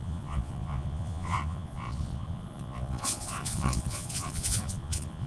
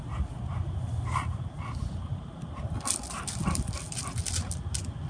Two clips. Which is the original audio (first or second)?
second